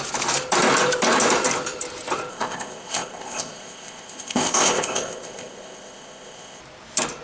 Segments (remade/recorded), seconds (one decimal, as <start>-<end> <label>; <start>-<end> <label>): 0.0-2.3 recorded; 2.3-6.6 remade; 6.6-7.2 recorded